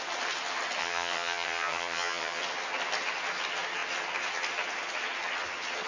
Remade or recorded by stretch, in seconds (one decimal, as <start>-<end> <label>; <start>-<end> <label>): 0.0-0.8 recorded; 0.8-2.4 remade; 2.4-5.9 recorded